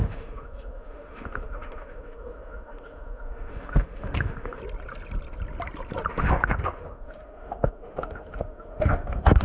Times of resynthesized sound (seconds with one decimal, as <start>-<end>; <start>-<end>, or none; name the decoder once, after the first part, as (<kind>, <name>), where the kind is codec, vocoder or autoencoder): 0.0-4.6 (autoencoder, DAC-VAE); 6.1-9.4